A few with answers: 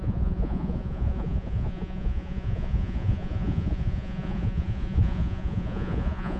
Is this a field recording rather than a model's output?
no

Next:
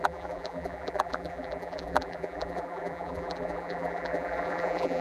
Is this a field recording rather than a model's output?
no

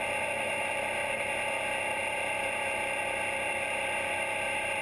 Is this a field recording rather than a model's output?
yes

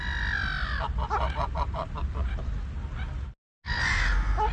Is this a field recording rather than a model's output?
yes